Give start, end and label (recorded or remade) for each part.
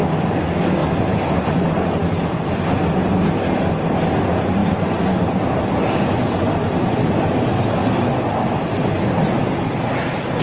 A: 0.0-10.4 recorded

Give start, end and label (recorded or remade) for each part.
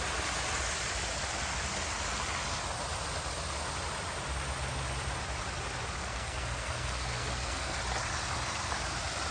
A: 0.0-6.0 recorded; 6.0-7.8 remade; 7.8-9.3 recorded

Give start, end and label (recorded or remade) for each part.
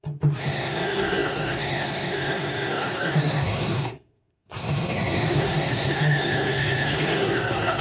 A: 0.0-7.8 remade